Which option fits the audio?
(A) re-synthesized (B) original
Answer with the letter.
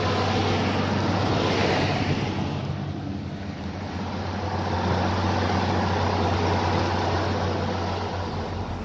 B